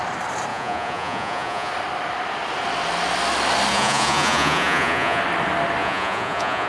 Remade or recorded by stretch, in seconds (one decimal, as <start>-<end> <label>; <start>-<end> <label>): 0.0-0.5 recorded; 0.5-1.7 remade; 1.7-3.7 recorded; 3.7-5.2 remade; 5.2-5.8 recorded; 5.8-6.7 remade